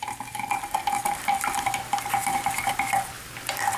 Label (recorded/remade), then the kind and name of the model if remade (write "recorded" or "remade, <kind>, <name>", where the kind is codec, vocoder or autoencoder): recorded